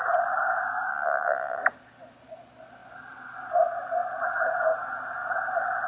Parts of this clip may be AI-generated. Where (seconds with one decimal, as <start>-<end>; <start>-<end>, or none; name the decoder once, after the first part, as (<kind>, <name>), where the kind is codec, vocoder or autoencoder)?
0.9-1.6 (vocoder, WaveNeXt)